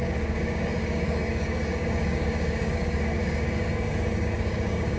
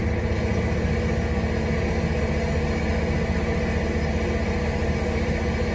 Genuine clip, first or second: second